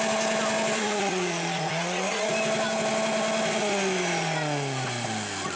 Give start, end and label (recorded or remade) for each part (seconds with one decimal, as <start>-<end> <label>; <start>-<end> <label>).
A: 0.0-0.8 recorded; 0.8-2.3 remade; 2.3-5.6 recorded